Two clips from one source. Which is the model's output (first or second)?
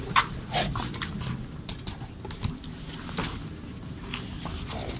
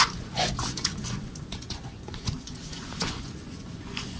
second